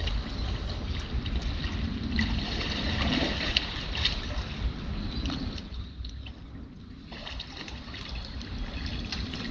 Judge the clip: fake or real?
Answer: real